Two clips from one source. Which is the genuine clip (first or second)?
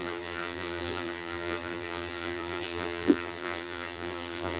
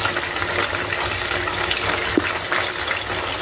second